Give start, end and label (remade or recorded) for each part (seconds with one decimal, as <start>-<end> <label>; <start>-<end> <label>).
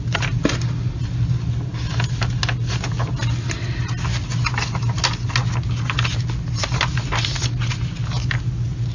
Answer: 0.0-8.9 recorded